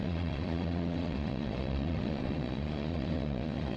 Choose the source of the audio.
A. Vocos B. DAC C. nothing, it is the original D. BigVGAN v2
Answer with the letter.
A